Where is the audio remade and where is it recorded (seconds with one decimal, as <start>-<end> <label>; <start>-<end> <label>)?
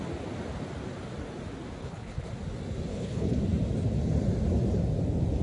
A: 0.0-1.8 recorded; 1.8-2.3 remade; 2.3-2.9 recorded; 2.9-3.4 remade; 3.4-5.4 recorded